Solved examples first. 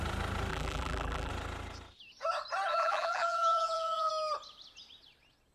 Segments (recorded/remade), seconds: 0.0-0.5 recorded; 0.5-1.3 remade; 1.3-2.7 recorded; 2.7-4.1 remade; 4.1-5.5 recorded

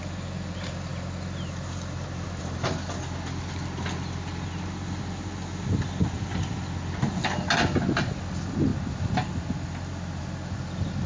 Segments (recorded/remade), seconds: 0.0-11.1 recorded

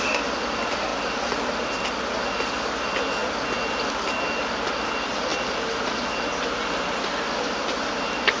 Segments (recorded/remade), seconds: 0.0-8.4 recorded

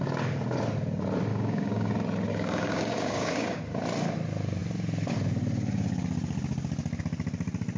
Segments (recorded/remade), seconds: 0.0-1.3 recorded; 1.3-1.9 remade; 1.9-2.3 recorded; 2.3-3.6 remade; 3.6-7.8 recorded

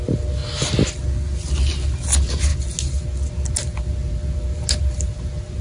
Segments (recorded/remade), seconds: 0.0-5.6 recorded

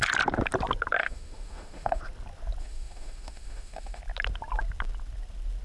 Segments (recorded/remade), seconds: 0.0-1.0 recorded; 1.0-2.0 remade; 2.0-2.6 recorded; 2.6-4.0 remade; 4.0-5.6 recorded